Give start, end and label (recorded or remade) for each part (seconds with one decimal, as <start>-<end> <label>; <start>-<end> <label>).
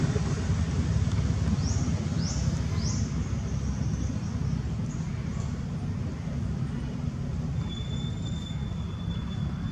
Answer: 0.0-5.3 recorded; 5.3-8.4 remade; 8.4-9.2 recorded; 9.2-9.7 remade